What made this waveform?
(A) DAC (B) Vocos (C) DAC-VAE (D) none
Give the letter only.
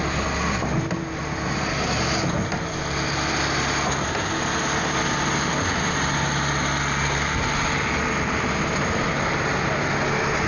D